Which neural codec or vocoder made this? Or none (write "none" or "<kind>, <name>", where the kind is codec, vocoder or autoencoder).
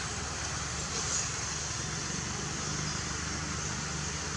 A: none